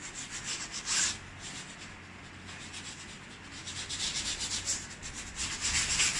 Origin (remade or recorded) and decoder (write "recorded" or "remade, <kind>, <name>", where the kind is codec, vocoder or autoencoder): recorded